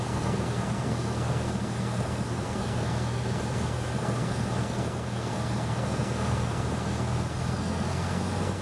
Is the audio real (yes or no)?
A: no